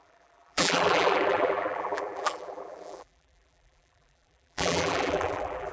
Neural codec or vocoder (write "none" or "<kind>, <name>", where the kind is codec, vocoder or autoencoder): vocoder, BigVGAN v2